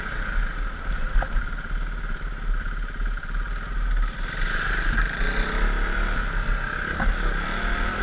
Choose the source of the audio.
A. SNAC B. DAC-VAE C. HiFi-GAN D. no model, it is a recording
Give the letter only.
D